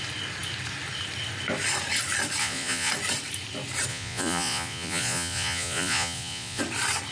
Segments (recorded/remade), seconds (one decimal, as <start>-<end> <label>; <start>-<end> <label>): 0.0-2.4 recorded; 2.4-2.9 remade; 2.9-3.9 recorded; 3.9-6.6 remade; 6.6-7.1 recorded